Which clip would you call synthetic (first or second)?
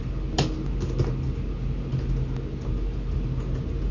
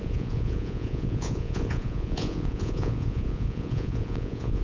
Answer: second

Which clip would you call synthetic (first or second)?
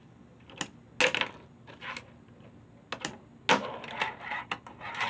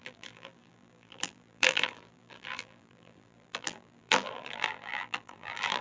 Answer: second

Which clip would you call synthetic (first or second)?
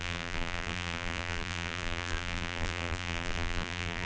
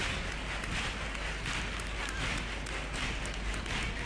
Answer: first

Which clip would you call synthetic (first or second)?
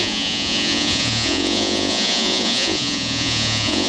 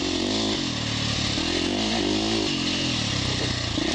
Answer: first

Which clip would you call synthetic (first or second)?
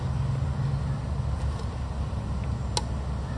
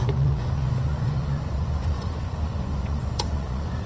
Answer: second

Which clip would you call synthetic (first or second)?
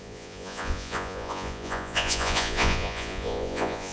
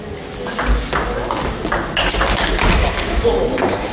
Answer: first